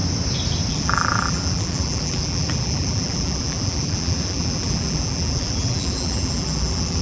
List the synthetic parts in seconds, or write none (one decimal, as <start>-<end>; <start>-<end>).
0.7-7.0